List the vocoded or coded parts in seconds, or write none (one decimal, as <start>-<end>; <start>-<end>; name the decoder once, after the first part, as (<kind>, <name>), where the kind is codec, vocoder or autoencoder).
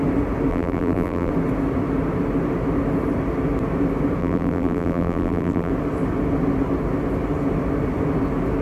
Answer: 0.5-1.3 (vocoder, BigVGAN v2); 4.2-5.7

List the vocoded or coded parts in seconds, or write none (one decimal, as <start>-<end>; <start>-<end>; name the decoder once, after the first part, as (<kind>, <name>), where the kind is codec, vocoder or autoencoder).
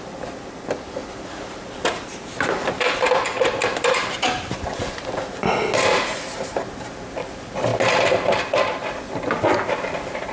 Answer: 1.0-4.8 (vocoder, BigVGAN v2)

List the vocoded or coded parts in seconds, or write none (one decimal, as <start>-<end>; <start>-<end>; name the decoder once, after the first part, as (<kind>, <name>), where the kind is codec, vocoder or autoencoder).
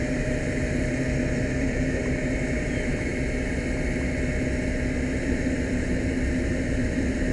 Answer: 0.0-3.1 (vocoder, BigVGAN v2); 5.2-7.3